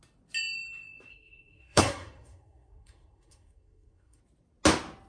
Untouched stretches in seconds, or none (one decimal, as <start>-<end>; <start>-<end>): 0.0-1.1; 4.2-5.1